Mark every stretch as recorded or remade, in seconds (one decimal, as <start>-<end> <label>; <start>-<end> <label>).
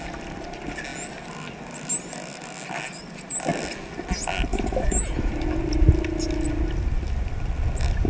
0.0-4.5 recorded; 4.5-5.3 remade; 5.3-8.1 recorded